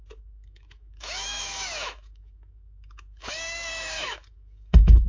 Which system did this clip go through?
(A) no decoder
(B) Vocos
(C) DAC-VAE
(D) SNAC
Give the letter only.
C